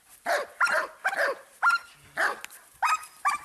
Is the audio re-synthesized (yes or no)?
no